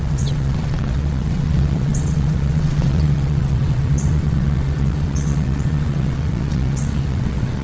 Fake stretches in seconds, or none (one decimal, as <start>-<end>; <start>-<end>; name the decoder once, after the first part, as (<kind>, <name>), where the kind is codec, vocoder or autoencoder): 0.0-7.6 (vocoder, WaveNeXt)